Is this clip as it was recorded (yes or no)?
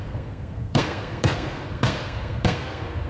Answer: no